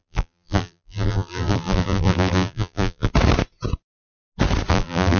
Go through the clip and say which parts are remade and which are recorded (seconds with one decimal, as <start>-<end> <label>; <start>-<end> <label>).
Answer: 0.0-3.1 remade; 3.1-4.7 recorded; 4.7-5.2 remade